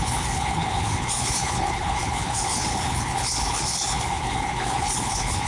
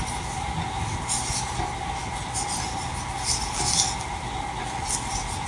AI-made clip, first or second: first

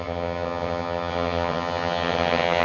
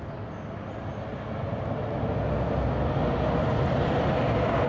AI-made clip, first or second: first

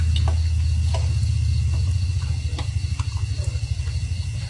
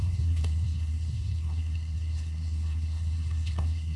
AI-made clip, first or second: second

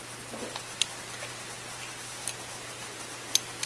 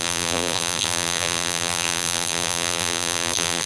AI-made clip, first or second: second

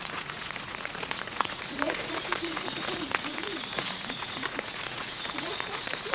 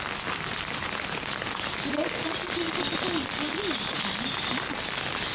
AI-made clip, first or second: first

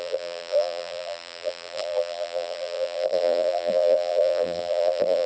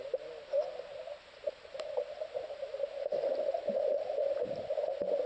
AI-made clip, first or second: first